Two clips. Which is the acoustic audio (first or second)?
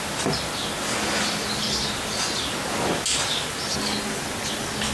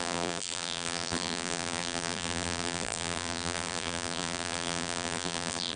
first